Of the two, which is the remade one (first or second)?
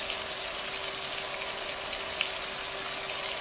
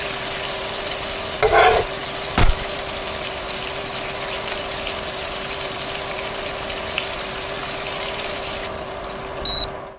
second